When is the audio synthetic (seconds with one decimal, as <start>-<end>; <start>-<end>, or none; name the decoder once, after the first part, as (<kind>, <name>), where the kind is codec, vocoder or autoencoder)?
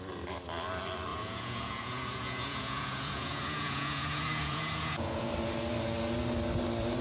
1.1-5.3 (vocoder, Vocos)